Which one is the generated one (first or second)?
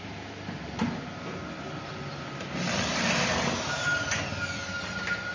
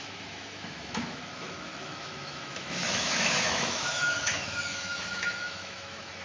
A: second